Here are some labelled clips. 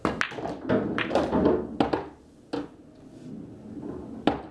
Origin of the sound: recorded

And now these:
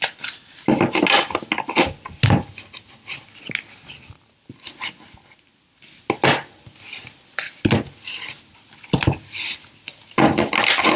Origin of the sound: recorded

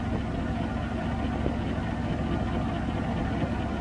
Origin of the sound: recorded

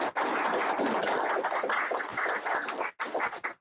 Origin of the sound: recorded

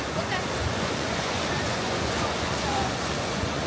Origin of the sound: remade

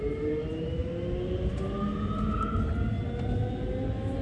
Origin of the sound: recorded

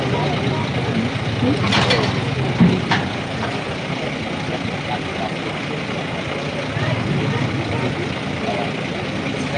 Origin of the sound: recorded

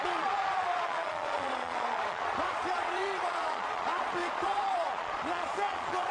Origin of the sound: remade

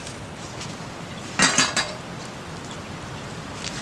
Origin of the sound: recorded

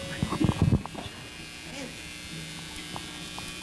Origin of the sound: recorded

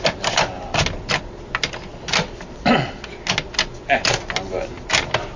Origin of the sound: recorded